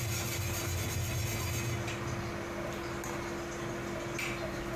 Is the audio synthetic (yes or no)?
no